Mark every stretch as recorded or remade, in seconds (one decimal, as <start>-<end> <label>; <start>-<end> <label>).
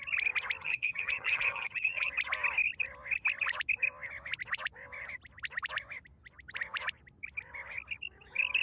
0.0-0.6 recorded; 0.6-2.1 remade; 2.1-8.6 recorded